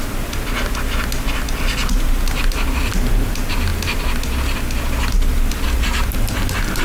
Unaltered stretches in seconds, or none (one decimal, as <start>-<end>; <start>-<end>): 0.0-6.8